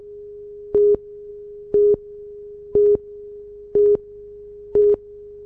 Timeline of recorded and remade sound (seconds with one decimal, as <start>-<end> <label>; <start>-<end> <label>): 0.0-5.5 recorded